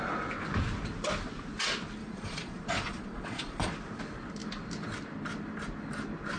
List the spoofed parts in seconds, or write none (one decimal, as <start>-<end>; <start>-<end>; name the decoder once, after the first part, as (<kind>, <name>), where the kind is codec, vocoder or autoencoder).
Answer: 2.0-3.7 (vocoder, Vocos)

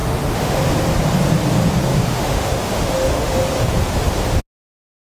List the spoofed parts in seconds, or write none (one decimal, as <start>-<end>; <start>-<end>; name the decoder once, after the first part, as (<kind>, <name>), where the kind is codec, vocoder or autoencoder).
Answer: 0.0-0.6 (autoencoder, DAC-VAE); 1.9-3.4

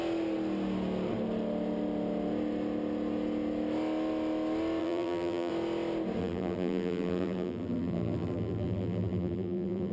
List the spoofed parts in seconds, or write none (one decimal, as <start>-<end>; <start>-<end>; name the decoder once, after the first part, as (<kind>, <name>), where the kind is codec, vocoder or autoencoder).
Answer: 4.8-5.5 (vocoder, BigVGAN v2); 6.2-9.9

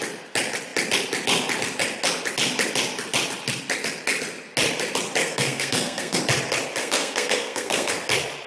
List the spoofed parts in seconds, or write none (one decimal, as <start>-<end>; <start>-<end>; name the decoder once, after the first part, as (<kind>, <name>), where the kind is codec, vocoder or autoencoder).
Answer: 5.2-6.2 (codec, SNAC); 6.8-7.9